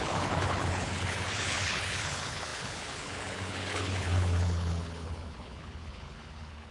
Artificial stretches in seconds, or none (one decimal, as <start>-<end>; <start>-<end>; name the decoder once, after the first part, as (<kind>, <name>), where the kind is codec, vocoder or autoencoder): 0.0-6.7 (codec, HILCodec)